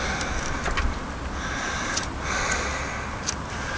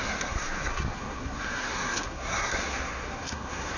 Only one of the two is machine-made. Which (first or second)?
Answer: second